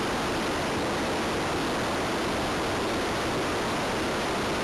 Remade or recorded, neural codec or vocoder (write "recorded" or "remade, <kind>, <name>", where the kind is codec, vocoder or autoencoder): recorded